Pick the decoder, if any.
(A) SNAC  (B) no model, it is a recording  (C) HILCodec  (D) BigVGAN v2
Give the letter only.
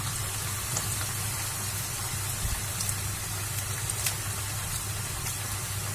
B